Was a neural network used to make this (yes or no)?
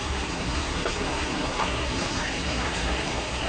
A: yes